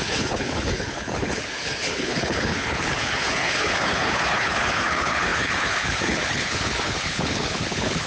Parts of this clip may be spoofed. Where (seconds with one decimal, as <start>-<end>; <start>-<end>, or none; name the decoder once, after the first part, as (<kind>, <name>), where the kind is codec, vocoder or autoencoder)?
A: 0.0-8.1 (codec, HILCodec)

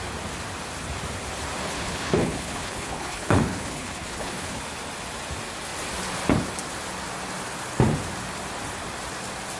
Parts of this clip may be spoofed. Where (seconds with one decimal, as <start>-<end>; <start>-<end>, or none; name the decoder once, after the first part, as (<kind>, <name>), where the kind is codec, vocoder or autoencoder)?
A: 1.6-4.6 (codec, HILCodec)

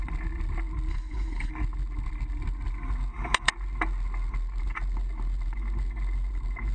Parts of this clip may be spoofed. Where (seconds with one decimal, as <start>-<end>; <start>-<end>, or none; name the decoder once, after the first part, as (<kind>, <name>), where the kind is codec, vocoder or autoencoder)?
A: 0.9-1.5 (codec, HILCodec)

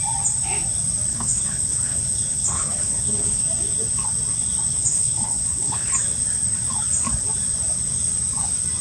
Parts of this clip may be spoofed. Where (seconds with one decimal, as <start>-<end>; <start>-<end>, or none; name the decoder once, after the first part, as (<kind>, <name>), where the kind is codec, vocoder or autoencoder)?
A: 1.1-3.4 (codec, HILCodec); 4.7-5.9

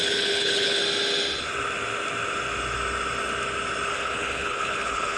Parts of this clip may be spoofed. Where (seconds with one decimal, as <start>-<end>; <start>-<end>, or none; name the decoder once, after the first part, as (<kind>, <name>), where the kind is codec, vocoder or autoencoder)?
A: 0.0-0.8 (codec, HILCodec); 3.9-5.2